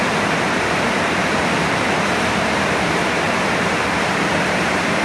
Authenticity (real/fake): fake